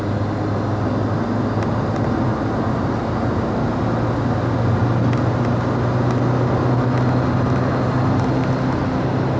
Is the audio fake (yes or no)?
no